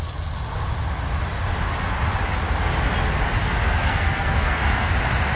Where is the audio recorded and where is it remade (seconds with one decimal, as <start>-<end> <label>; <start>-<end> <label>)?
0.0-3.4 recorded; 3.4-4.9 remade; 4.9-5.4 recorded